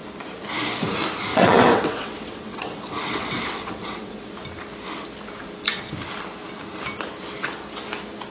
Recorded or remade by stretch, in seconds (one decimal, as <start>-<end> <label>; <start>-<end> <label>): 0.0-1.3 recorded; 1.3-4.3 remade; 4.3-8.3 recorded